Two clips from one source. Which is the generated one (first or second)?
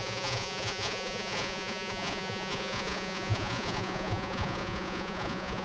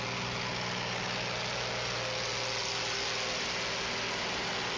first